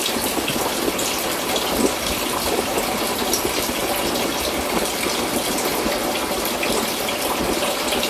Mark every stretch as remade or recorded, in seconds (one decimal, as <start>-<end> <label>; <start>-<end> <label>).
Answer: 0.0-3.8 remade; 3.8-4.6 recorded; 4.6-5.7 remade; 5.7-6.7 recorded; 6.7-8.1 remade